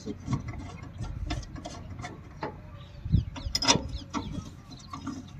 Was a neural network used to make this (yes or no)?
no